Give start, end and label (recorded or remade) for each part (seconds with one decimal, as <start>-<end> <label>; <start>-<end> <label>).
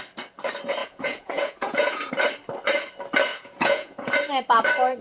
0.0-0.8 recorded; 0.8-2.1 remade; 2.1-3.3 recorded; 3.3-4.1 remade; 4.1-5.0 recorded